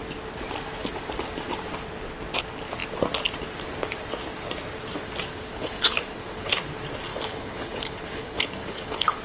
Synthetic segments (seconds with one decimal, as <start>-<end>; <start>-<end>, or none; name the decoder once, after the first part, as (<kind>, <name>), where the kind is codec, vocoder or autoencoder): 5.3-6.5 (codec, HILCodec); 7.1-9.2